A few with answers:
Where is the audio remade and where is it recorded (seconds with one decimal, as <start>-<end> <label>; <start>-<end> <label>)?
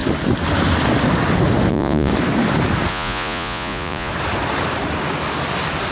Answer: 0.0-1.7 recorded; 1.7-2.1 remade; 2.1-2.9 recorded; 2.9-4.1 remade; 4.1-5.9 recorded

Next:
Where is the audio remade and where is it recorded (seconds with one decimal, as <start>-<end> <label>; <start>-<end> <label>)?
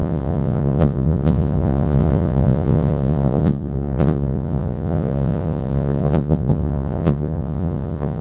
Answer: 0.0-8.2 remade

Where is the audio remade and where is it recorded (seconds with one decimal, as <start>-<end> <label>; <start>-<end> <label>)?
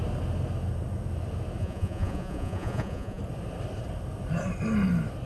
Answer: 0.0-1.6 recorded; 1.6-3.2 remade; 3.2-5.3 recorded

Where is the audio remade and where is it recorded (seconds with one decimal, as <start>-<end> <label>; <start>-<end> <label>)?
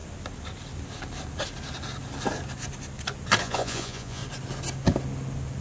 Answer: 0.0-3.4 recorded; 3.4-4.2 remade; 4.2-5.6 recorded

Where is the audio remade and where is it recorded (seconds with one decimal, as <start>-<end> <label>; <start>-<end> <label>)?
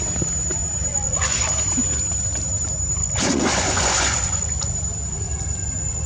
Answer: 0.0-0.9 recorded; 0.9-1.5 remade; 1.5-3.0 recorded; 3.0-4.7 remade; 4.7-6.1 recorded